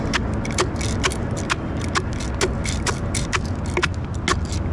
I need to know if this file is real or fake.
real